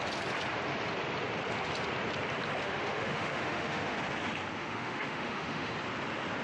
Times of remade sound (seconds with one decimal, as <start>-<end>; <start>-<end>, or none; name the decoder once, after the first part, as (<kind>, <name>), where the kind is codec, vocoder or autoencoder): 2.6-4.0 (autoencoder, DAC-VAE); 4.6-5.7